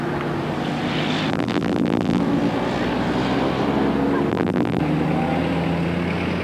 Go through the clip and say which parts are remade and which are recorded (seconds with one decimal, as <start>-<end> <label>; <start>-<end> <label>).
0.0-1.3 recorded; 1.3-2.2 remade; 2.2-4.3 recorded; 4.3-4.8 remade; 4.8-6.4 recorded